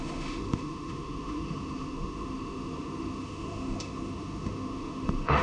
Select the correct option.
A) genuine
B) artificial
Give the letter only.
B